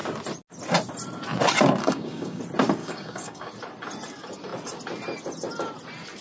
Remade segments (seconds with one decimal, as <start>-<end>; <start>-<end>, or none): 1.8-2.4; 2.8-3.5